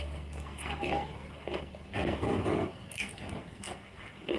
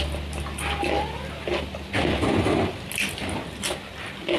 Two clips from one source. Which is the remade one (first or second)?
first